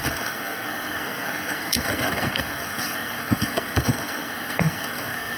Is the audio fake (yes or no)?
yes